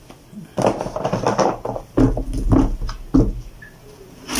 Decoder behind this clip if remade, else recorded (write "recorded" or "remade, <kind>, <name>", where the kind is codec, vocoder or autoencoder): recorded